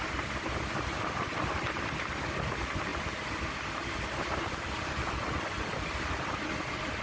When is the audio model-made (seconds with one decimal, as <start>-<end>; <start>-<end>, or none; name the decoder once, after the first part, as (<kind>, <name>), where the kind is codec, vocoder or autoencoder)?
none